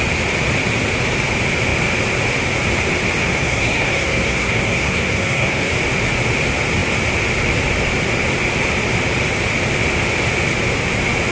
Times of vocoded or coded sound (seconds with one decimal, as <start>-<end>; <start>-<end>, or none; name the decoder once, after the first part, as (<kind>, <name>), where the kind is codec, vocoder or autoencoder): 3.2-5.7 (codec, SNAC)